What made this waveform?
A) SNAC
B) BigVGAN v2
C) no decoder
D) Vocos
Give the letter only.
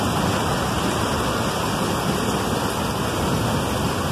C